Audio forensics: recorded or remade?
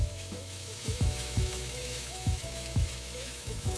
remade